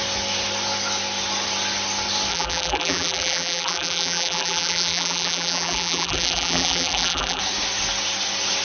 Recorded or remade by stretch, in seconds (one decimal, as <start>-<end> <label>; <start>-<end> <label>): 0.0-2.3 recorded; 2.3-7.4 remade; 7.4-8.6 recorded